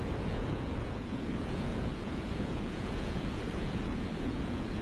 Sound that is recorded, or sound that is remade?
remade